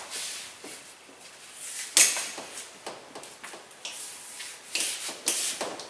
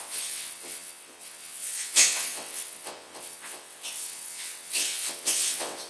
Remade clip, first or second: second